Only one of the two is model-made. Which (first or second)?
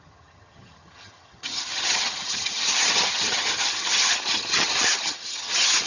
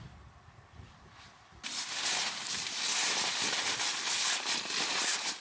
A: first